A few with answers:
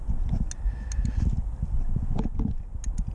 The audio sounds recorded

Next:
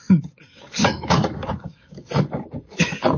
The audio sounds remade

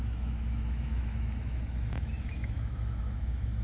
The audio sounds remade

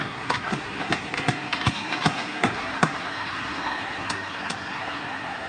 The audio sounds remade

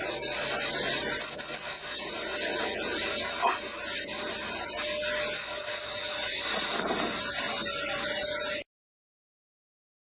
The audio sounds recorded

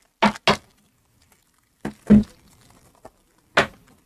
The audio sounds recorded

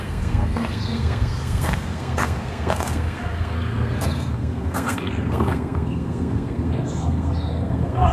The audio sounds remade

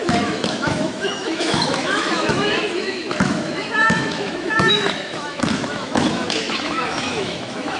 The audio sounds remade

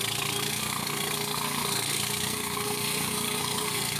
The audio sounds remade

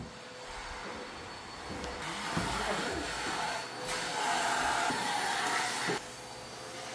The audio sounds recorded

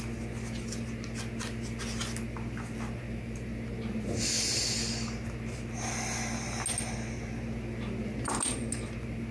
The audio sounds recorded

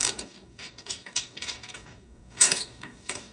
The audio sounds remade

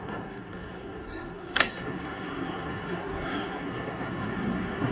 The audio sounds remade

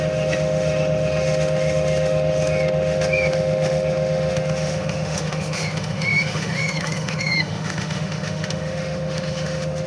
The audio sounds remade